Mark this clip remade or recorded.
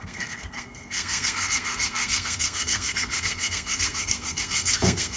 remade